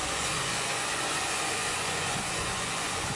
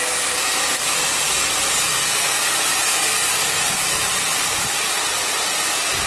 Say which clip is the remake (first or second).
first